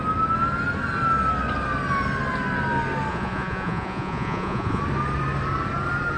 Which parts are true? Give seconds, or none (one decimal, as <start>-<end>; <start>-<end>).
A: 0.0-3.1; 4.8-6.2